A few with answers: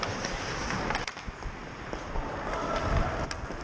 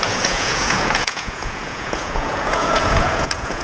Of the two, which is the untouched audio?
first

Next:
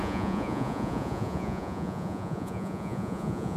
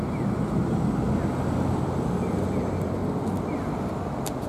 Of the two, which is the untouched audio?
second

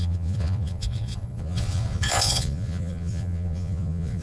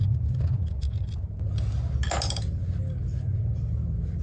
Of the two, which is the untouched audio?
second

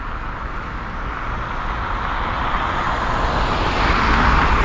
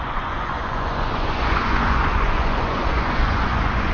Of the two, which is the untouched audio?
first